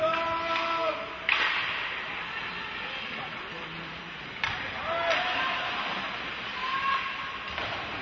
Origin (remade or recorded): recorded